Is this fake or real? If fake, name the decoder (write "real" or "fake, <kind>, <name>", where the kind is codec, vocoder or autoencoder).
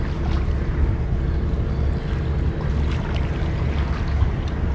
real